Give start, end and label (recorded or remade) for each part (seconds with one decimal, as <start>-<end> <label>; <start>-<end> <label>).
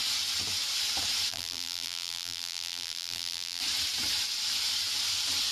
0.0-1.3 recorded; 1.3-3.6 remade; 3.6-5.5 recorded